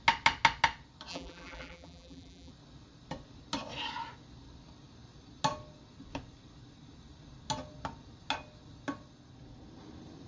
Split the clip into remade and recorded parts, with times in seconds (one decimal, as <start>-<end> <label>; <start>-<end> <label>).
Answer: 0.0-1.1 recorded; 1.1-2.5 remade; 2.5-10.3 recorded